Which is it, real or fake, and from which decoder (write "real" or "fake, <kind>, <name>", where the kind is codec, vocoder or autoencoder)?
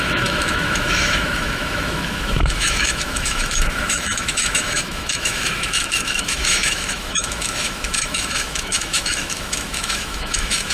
fake, autoencoder, DAC-VAE